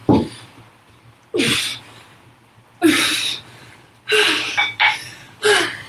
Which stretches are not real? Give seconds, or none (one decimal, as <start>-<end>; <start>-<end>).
0.0-1.6; 2.1-5.9